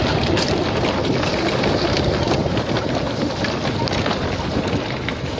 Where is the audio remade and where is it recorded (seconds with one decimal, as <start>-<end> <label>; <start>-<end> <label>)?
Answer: 0.0-5.4 recorded